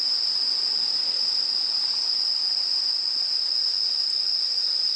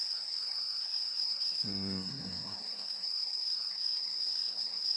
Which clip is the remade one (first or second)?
second